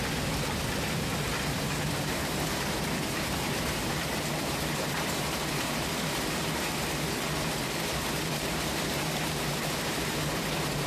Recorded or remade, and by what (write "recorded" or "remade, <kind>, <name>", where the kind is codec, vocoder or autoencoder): remade, vocoder, BigVGAN v2